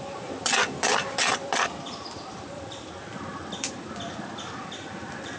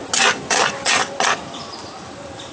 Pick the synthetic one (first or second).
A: first